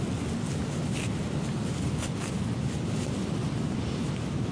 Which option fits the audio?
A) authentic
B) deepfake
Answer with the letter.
A